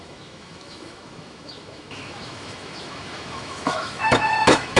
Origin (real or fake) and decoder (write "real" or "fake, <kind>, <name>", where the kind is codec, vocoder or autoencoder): fake, autoencoder, DAC-VAE